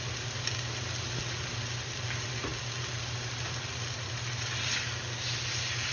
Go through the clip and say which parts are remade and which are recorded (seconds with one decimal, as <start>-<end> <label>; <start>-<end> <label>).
0.0-5.9 recorded